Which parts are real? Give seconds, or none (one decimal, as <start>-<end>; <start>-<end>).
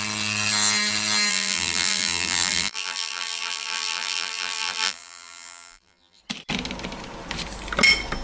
0.0-1.3; 6.2-8.2